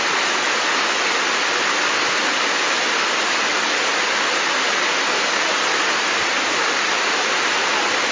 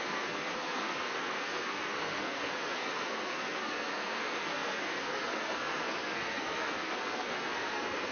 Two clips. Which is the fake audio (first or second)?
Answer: second